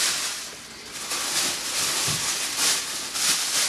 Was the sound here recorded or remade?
recorded